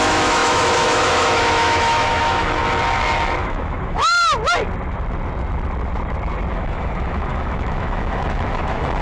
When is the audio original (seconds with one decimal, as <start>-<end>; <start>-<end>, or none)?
2.6-3.4; 4.1-6.5